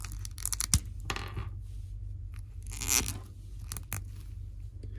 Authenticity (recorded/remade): recorded